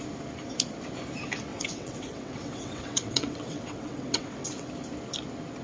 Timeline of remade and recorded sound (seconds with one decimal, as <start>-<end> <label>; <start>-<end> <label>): 0.0-1.5 recorded; 1.5-4.7 remade; 4.7-5.6 recorded